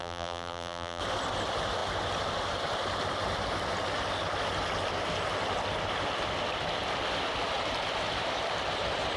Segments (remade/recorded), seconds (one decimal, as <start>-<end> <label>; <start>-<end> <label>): 0.0-1.0 remade; 1.0-9.2 recorded